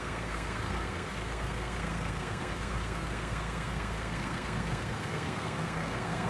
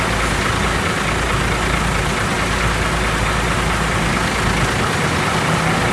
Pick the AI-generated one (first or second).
first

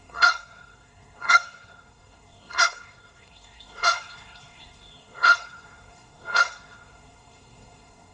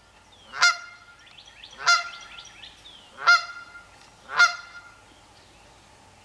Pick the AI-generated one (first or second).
first